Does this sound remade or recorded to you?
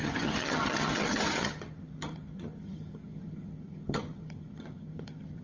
remade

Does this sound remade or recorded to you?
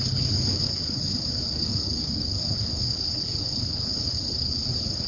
remade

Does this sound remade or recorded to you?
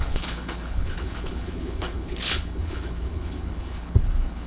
remade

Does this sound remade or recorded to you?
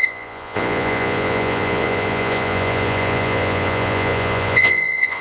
remade